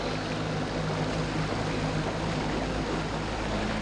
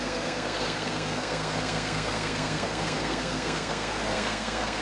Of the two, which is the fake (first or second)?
second